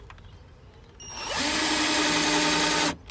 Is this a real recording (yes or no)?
yes